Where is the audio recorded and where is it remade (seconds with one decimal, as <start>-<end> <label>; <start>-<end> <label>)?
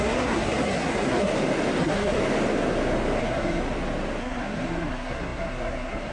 0.0-1.3 remade; 1.3-1.8 recorded; 1.8-2.2 remade; 2.2-3.2 recorded; 3.2-3.6 remade; 3.6-4.2 recorded; 4.2-6.1 remade